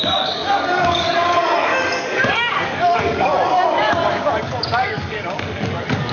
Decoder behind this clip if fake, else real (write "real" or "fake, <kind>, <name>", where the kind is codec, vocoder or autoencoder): fake, codec, DAC